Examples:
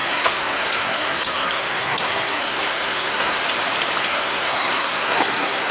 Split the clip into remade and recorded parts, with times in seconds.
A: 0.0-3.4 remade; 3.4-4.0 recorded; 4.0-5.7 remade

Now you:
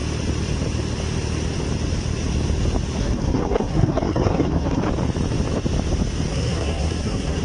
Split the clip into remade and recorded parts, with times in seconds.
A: 0.0-3.0 recorded; 3.0-4.8 remade; 4.8-6.3 recorded; 6.3-7.4 remade

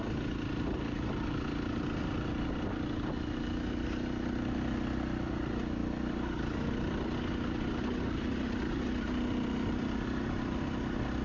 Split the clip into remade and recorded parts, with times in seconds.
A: 0.0-11.2 recorded

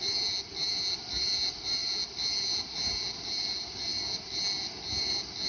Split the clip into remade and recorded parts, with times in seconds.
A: 0.0-5.5 recorded